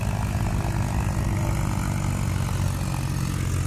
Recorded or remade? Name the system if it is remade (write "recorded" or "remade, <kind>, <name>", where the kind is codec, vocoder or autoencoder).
recorded